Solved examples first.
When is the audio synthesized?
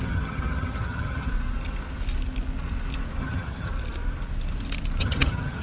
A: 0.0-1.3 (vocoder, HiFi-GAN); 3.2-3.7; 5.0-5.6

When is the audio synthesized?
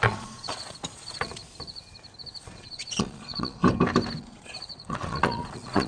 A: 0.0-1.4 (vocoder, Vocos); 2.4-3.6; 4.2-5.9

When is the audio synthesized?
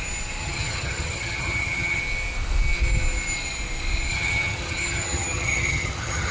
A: 0.4-2.0 (vocoder, HiFi-GAN); 4.1-6.3